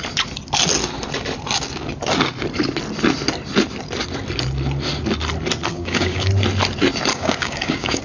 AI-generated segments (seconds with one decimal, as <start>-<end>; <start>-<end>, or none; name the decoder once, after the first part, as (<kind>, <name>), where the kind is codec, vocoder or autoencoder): 5.7-6.3 (codec, DAC); 7.1-8.0